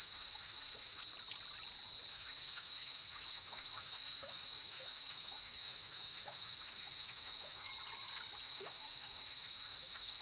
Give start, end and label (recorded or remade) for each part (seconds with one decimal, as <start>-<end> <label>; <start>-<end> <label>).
0.0-1.0 remade; 1.0-2.1 recorded; 2.1-7.7 remade; 7.7-8.4 recorded; 8.4-10.2 remade